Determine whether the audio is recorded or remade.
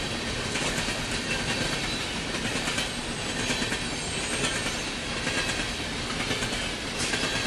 recorded